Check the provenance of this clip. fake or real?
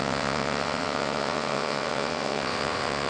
fake